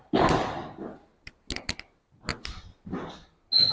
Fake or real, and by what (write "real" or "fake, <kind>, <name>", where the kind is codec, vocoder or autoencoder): real